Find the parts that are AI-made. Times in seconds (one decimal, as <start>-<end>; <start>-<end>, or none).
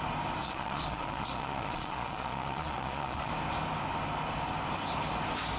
0.4-3.3